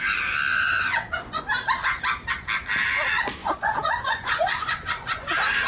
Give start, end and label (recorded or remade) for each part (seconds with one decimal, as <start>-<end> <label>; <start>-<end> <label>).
0.0-0.5 recorded; 0.5-1.4 remade; 1.4-3.4 recorded; 3.4-5.3 remade; 5.3-5.7 recorded